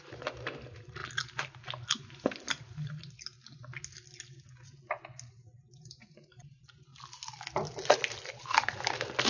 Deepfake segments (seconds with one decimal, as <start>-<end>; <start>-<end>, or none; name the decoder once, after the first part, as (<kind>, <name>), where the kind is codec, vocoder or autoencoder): 0.0-1.0 (vocoder, BigVGAN v2); 5.3-6.9; 8.3-9.3